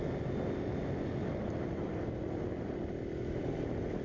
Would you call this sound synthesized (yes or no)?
no